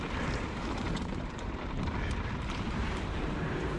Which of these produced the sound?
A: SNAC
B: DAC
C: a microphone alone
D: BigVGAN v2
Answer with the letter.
D